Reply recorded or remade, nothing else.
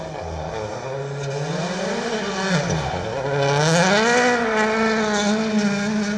recorded